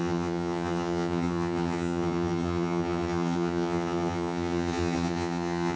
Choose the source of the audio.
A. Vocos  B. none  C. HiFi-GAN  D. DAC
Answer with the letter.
C